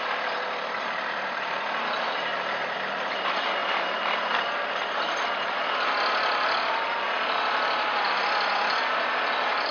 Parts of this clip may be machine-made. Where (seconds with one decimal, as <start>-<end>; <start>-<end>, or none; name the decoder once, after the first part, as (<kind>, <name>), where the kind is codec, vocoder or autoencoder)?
0.0-9.7 (vocoder, BigVGAN v2)